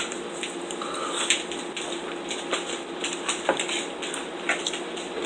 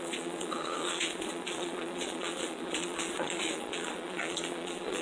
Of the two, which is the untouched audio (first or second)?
first